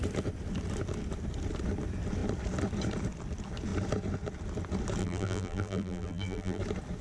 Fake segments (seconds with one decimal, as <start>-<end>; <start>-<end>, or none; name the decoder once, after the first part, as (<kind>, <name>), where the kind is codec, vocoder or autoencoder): 5.0-6.6 (vocoder, BigVGAN v2)